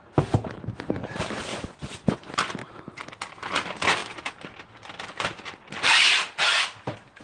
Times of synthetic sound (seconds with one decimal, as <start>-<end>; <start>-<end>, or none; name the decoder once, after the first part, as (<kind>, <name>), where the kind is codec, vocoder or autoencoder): 1.5-2.2 (vocoder, Vocos)